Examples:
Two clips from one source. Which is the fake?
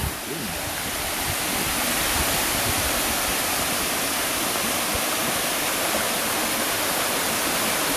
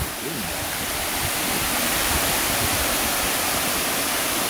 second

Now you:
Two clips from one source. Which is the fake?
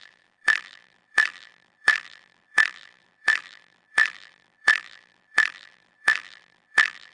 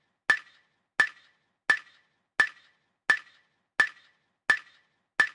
first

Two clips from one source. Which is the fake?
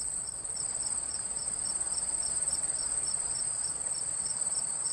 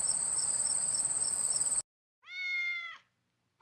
first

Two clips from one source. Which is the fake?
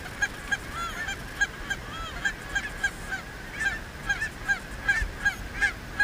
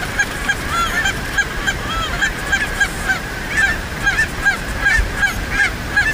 second